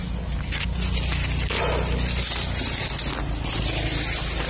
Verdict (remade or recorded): recorded